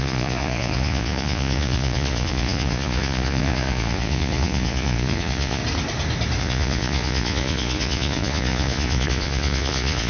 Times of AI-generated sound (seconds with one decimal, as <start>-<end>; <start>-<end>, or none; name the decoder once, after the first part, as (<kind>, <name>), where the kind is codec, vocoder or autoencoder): 0.0-5.6 (vocoder, Vocos); 6.4-10.1